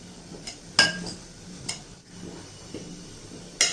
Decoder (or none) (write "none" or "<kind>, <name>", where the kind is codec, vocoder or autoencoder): none